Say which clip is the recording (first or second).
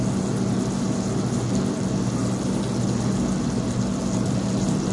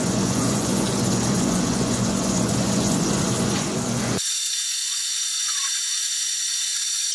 first